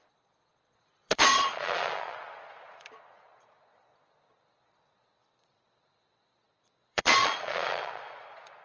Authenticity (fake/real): fake